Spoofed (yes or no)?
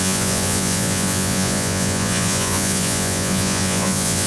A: yes